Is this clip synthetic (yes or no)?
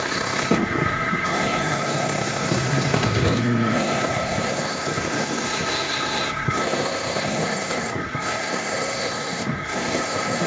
yes